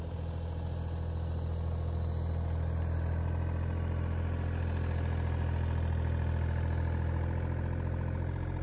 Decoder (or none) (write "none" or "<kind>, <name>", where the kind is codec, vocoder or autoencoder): none